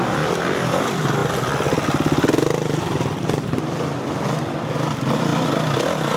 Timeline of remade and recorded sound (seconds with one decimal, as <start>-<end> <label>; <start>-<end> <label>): 0.0-6.2 recorded